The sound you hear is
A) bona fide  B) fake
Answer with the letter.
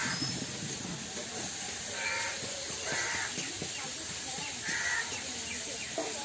A